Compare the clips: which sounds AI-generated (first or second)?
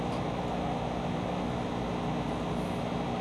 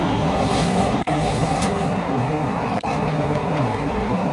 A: second